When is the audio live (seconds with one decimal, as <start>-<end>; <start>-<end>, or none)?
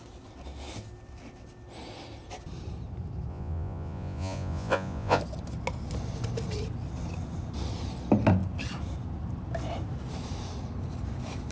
0.0-3.3; 5.2-11.5